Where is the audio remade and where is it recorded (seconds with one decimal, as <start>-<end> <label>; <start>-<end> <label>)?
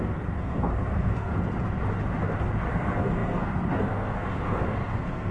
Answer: 0.0-1.3 remade; 1.3-2.7 recorded; 2.7-5.3 remade